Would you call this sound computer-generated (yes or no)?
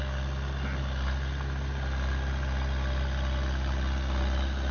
no